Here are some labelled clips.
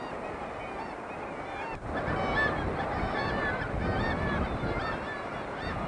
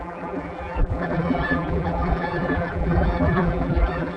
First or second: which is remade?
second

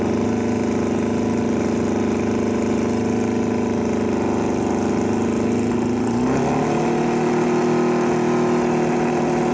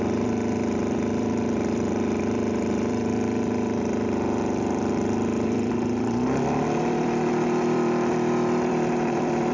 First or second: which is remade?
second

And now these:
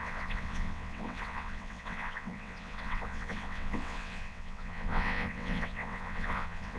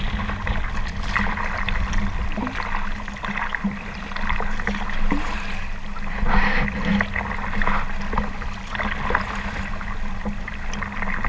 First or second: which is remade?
first